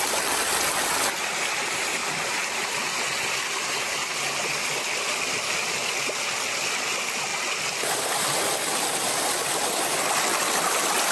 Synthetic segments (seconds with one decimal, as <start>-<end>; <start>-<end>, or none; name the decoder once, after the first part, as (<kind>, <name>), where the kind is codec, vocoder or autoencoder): none